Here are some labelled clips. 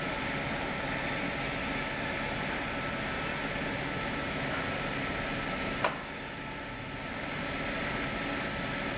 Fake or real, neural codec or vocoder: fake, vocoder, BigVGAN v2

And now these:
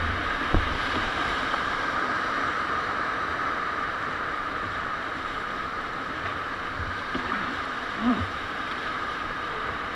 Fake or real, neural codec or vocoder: fake, vocoder, BigVGAN v2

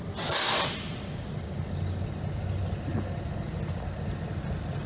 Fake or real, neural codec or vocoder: real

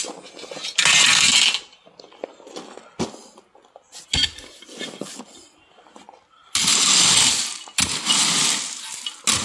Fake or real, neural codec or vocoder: real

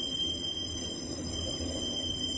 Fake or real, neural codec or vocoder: real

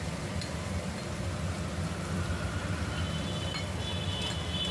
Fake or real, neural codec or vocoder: real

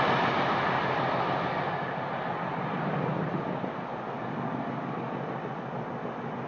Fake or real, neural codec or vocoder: real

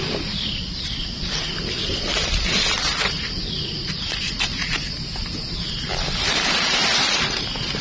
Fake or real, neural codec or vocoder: real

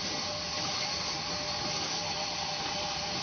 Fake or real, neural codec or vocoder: real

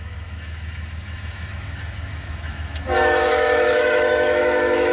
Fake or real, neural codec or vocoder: fake, autoencoder, DAC-VAE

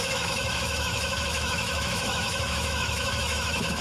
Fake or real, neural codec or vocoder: fake, autoencoder, DAC-VAE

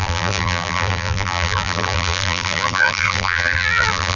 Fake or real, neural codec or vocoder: fake, vocoder, BigVGAN v2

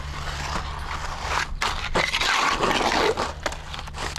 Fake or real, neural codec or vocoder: real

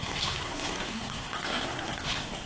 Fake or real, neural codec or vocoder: fake, codec, SNAC